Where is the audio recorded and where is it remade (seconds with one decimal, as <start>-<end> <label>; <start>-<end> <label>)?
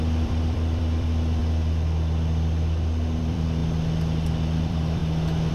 0.0-1.4 remade; 1.4-3.2 recorded; 3.2-3.6 remade; 3.6-4.6 recorded; 4.6-5.0 remade; 5.0-5.5 recorded